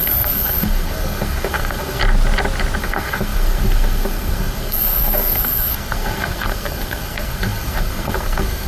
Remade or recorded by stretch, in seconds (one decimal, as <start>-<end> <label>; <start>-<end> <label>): 0.0-2.0 remade; 2.0-2.8 recorded; 2.8-8.7 remade